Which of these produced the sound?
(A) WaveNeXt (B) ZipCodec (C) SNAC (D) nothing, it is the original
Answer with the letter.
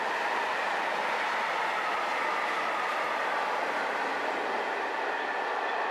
D